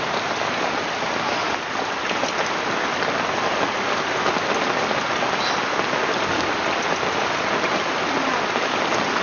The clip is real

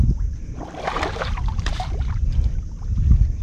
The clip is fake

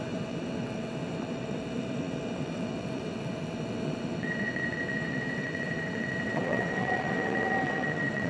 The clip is fake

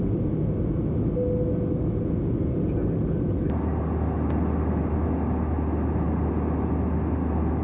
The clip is real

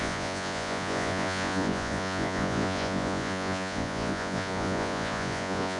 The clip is fake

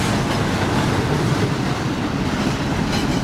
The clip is real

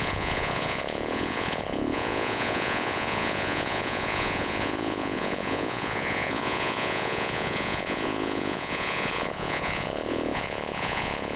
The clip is fake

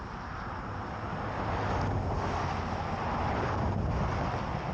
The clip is real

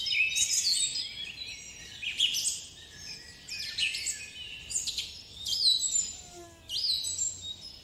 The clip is real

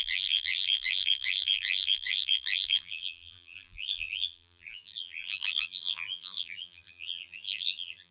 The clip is fake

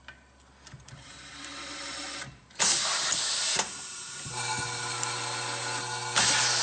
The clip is real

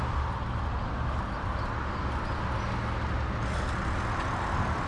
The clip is real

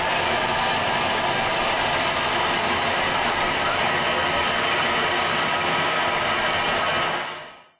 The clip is real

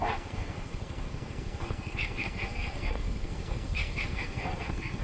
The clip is fake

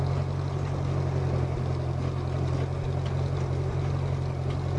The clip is real